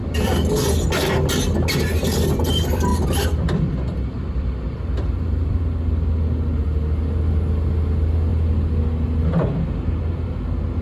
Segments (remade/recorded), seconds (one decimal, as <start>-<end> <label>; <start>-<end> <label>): 0.0-0.5 remade; 0.5-2.9 recorded; 2.9-5.6 remade; 5.6-10.8 recorded